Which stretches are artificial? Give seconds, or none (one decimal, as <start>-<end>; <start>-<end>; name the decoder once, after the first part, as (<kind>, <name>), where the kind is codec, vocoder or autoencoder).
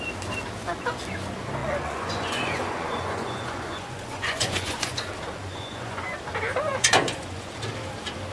1.6-5.0 (vocoder, Vocos); 5.4-6.2; 6.7-7.5